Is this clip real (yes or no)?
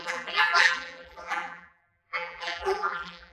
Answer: no